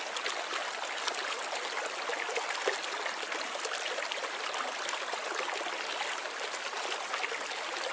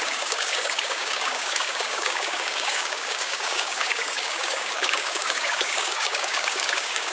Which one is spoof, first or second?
second